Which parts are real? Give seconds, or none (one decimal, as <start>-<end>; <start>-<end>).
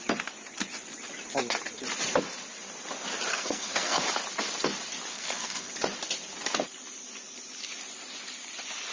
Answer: 0.0-3.3; 4.0-5.1; 5.7-8.9